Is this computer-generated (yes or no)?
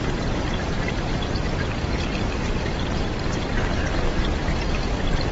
yes